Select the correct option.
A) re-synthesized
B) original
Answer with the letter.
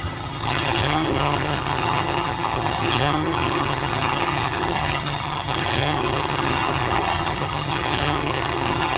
A